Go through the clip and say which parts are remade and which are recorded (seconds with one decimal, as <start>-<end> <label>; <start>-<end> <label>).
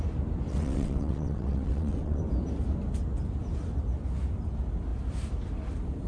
0.0-0.5 recorded; 0.5-2.2 remade; 2.2-6.1 recorded